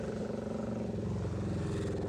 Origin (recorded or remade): recorded